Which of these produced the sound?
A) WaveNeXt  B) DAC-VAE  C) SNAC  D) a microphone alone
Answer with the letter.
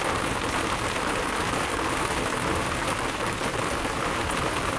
D